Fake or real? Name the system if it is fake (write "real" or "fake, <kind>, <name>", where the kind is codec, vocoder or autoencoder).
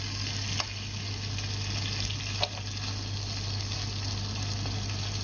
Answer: real